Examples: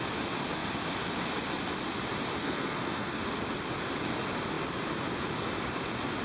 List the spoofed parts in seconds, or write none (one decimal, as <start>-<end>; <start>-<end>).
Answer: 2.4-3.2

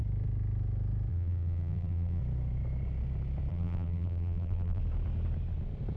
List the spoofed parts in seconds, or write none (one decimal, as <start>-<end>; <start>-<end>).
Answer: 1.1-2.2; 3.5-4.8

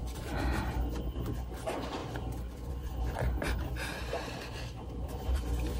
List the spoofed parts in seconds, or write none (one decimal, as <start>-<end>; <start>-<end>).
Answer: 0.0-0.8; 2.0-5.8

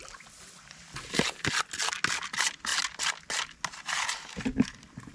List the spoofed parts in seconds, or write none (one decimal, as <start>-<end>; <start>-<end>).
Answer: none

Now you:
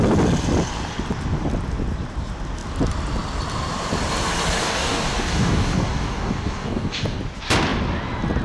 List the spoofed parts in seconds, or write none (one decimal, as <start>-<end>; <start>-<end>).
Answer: 4.6-7.2

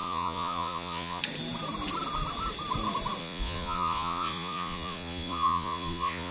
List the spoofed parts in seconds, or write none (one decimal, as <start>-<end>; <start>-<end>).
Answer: 0.0-1.2; 3.2-6.3